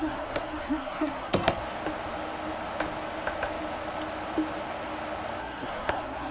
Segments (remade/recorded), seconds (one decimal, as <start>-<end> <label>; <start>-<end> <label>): 0.0-1.6 remade; 1.6-5.4 recorded; 5.4-6.3 remade